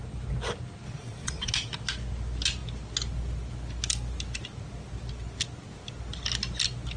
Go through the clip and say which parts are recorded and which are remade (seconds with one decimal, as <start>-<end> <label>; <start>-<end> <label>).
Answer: 0.0-1.0 recorded; 1.0-1.5 remade; 1.5-7.0 recorded